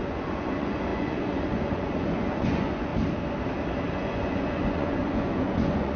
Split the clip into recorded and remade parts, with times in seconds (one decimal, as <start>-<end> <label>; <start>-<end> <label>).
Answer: 0.0-2.9 remade; 2.9-3.9 recorded; 3.9-6.0 remade